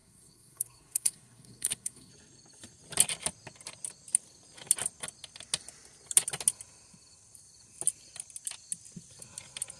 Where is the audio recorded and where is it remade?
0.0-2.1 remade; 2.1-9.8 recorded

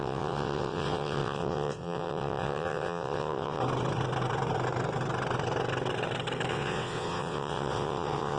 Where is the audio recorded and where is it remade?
0.0-3.6 remade; 3.6-6.5 recorded; 6.5-8.4 remade

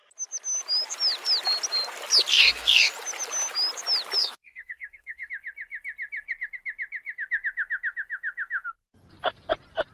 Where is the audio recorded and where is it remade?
0.0-2.3 recorded; 2.3-2.9 remade; 2.9-4.2 recorded; 4.2-5.3 remade; 5.3-9.9 recorded

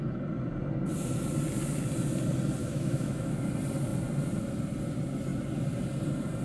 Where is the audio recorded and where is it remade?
0.0-2.6 recorded; 2.6-3.5 remade; 3.5-6.4 recorded